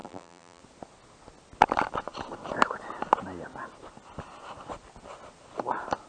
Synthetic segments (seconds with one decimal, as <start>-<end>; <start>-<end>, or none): 0.0-0.6